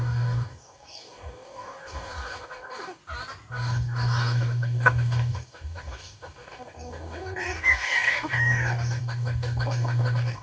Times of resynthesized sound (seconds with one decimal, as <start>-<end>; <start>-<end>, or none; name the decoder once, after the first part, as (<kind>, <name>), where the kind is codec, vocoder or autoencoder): 0.0-3.0 (codec, DAC); 3.5-10.4